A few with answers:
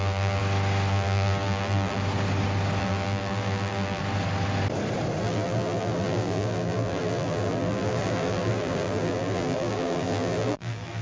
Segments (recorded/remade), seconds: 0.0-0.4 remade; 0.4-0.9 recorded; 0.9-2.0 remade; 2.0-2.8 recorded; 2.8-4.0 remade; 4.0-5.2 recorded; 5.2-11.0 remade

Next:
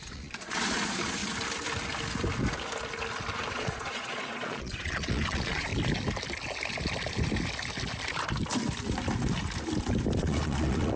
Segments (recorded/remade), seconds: 0.0-1.2 remade; 1.2-3.5 recorded; 3.5-5.7 remade; 5.7-10.2 recorded; 10.2-11.0 remade

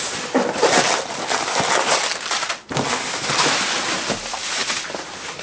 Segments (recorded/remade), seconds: 0.0-5.4 recorded

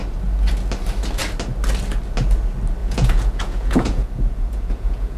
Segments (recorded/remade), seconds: 0.0-2.8 recorded; 2.8-5.2 remade

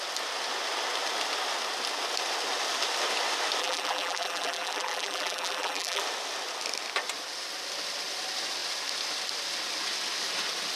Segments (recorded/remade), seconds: 0.0-3.6 recorded; 3.6-6.0 remade; 6.0-10.8 recorded